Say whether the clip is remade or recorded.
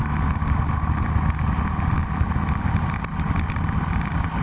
recorded